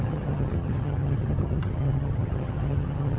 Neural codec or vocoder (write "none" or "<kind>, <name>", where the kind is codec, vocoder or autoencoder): vocoder, HiFi-GAN